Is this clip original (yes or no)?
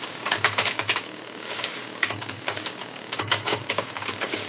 no